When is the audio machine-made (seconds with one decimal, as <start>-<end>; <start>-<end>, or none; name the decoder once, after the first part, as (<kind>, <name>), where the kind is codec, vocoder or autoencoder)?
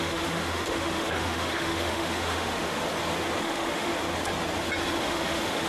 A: 0.0-2.8 (autoencoder, DAC-VAE); 3.4-3.9; 5.0-5.7